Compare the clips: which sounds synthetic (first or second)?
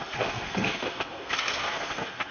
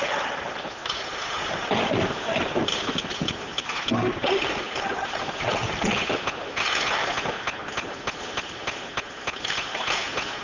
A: first